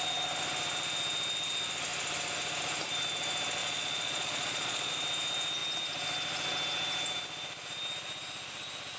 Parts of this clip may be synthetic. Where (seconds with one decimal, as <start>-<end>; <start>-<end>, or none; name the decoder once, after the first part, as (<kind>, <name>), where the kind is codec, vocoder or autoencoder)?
3.6-4.9 (vocoder, Vocos)